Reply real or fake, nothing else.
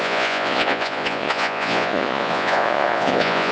fake